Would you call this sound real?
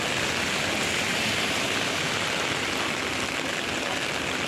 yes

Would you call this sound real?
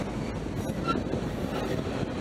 yes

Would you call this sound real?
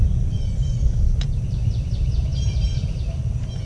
no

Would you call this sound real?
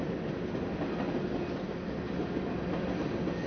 yes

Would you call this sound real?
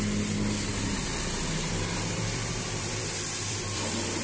no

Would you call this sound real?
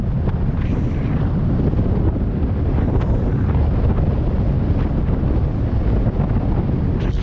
yes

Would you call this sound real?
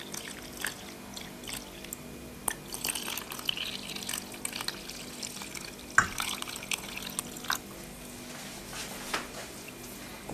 yes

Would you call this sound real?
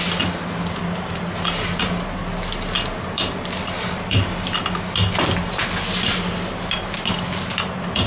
yes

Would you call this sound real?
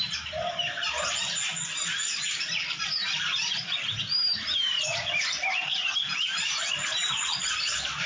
no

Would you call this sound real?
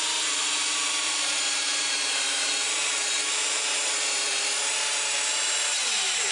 no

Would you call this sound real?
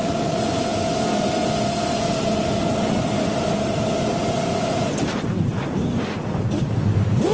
no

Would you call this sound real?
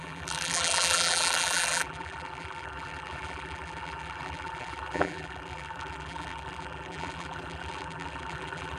no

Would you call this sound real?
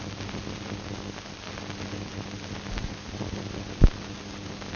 yes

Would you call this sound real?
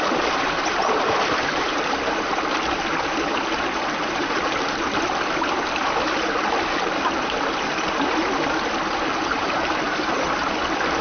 no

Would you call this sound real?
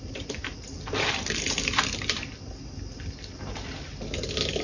yes